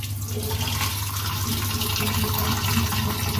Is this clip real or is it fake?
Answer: real